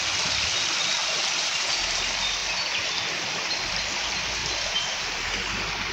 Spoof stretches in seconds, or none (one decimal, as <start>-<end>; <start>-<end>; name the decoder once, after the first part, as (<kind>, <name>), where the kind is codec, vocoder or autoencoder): 1.0-2.0 (vocoder, BigVGAN v2); 4.4-5.0

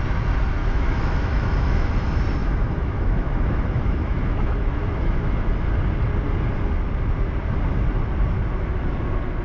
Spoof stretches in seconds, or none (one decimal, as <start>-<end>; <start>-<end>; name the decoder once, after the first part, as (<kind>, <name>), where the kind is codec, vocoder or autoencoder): 0.6-1.9 (autoencoder, DAC-VAE); 2.4-5.4

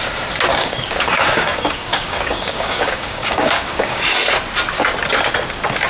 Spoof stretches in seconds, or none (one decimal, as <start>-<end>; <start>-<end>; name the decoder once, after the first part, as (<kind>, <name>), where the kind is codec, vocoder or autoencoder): 0.5-4.0 (codec, DAC)

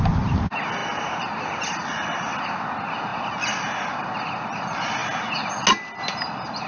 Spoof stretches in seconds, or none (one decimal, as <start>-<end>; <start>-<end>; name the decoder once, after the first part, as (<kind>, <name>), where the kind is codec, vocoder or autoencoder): none